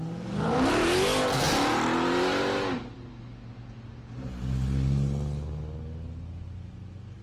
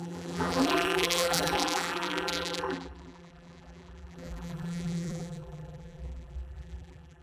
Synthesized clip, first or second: second